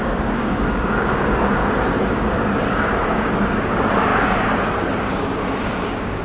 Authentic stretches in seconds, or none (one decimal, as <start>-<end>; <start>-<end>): 1.6-2.1